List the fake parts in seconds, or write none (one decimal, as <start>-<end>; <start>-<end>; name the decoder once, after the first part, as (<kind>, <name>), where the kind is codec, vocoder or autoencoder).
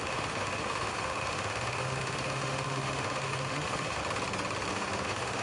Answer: 0.0-4.0 (autoencoder, DAC-VAE); 4.7-5.4